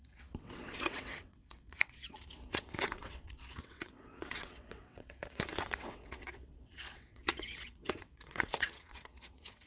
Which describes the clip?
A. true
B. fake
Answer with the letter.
B